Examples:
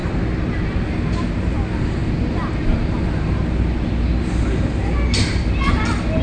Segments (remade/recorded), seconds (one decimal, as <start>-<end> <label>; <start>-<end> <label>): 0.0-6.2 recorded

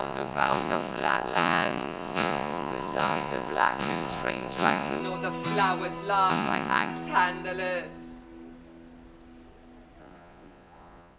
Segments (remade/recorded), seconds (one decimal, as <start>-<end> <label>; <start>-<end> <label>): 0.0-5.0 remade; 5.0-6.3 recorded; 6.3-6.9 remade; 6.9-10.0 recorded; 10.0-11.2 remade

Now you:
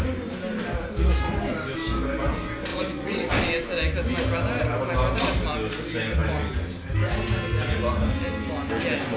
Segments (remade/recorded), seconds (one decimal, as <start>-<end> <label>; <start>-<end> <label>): 0.0-2.7 recorded; 2.7-3.3 remade; 3.3-9.2 recorded

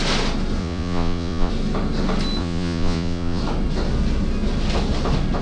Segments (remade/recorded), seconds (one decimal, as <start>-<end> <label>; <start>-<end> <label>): 0.0-0.6 recorded; 0.6-1.5 remade; 1.5-2.4 recorded; 2.4-3.4 remade; 3.4-5.4 recorded

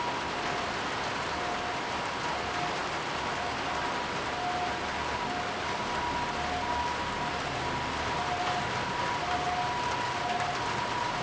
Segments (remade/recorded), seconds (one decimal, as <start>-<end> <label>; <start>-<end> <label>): 0.0-11.2 recorded

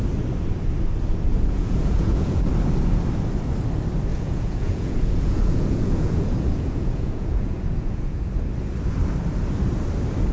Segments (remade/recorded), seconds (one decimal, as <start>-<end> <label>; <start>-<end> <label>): 0.0-1.3 recorded; 1.3-2.5 remade; 2.5-4.1 recorded; 4.1-8.2 remade; 8.2-10.3 recorded

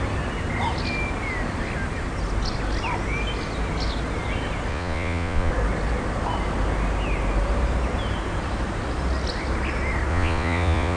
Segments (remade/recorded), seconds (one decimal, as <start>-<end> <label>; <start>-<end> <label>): 0.0-4.7 recorded; 4.7-5.5 remade; 5.5-10.1 recorded; 10.1-11.0 remade

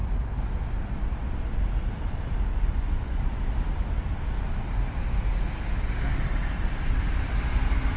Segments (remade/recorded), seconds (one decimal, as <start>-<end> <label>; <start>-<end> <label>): 0.0-2.5 recorded; 2.5-3.2 remade; 3.2-8.0 recorded